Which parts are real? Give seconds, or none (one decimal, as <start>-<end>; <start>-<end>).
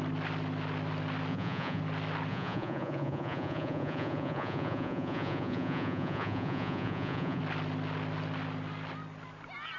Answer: 0.0-1.3; 1.8-2.3; 7.4-9.8